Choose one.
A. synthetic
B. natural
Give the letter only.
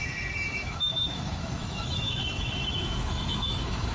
A